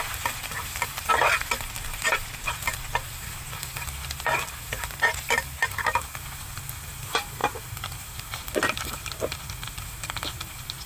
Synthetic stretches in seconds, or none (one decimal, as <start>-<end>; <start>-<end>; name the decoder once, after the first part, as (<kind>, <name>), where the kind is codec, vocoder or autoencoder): 7.4-8.2 (vocoder, BigVGAN v2)